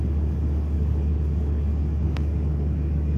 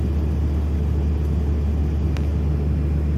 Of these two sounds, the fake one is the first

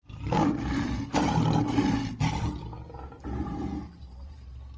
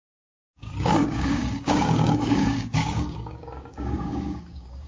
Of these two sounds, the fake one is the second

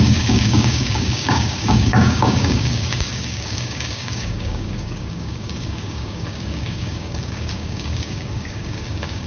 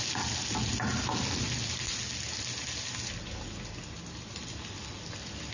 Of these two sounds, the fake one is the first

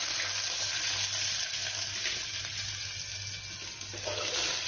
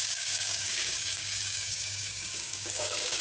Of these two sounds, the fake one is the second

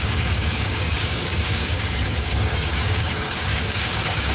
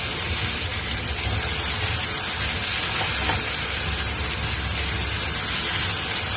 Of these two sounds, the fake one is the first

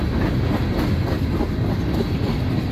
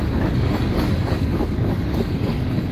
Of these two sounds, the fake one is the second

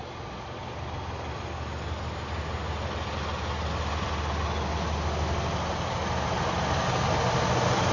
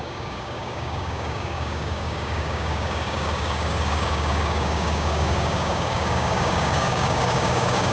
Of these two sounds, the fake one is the second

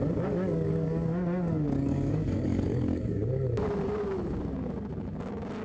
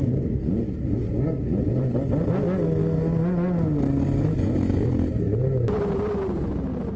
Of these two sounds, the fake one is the first